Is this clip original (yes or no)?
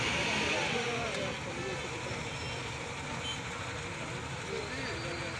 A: yes